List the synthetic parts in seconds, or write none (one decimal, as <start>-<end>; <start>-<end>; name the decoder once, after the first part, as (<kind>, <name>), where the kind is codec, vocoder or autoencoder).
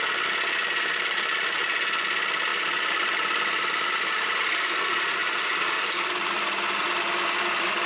2.5-4.8 (vocoder, BigVGAN v2); 5.2-6.3